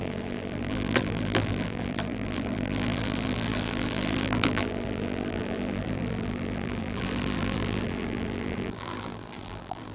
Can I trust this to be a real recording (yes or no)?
no